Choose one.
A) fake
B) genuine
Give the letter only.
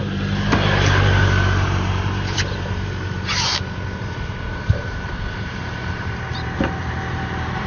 A